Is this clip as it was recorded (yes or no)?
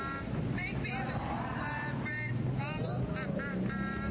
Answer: yes